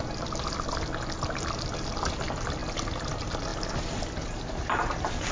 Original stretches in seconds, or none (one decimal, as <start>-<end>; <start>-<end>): 0.0-5.3